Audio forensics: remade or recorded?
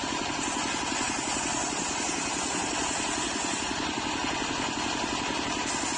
recorded